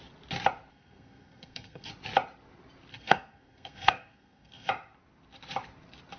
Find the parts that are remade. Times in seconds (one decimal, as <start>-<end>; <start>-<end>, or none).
0.7-1.9; 2.9-4.7